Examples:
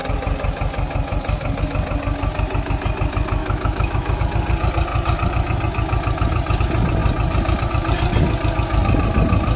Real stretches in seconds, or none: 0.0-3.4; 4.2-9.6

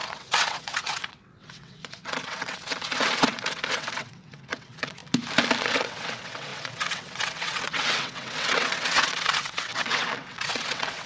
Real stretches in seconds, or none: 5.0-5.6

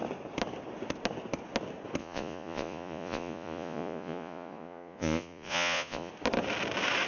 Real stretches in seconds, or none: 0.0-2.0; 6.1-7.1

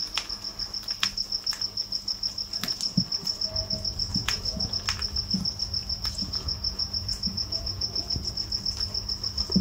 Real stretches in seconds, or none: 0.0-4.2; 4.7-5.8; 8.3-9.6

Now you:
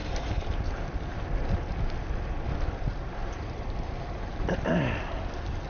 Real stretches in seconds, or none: 1.2-3.2; 4.7-5.7